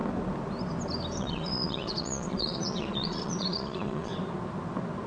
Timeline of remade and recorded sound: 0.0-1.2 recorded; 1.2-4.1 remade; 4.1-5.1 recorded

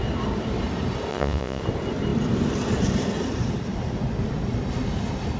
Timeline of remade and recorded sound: 0.0-1.1 recorded; 1.1-1.6 remade; 1.6-5.4 recorded

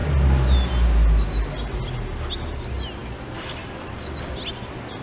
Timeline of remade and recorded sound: 0.0-5.0 recorded

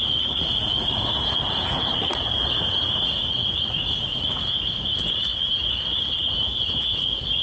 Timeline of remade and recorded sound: 0.0-7.4 remade

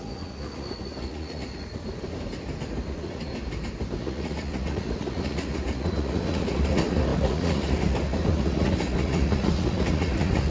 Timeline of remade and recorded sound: 0.0-1.8 remade; 1.8-2.9 recorded; 2.9-3.3 remade; 3.3-4.0 recorded; 4.0-10.5 remade

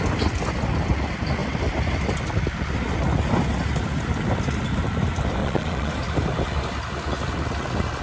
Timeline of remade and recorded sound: 0.0-5.4 recorded; 5.4-5.9 remade; 5.9-8.0 recorded

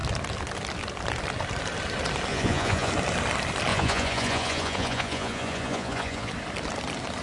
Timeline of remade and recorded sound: 0.0-2.3 recorded; 2.3-2.9 remade; 2.9-3.7 recorded; 3.7-6.3 remade; 6.3-7.2 recorded

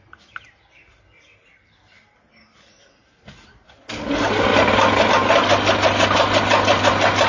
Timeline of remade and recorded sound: 0.0-7.3 recorded